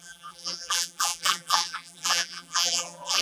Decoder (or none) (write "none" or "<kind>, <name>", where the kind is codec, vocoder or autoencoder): vocoder, BigVGAN v2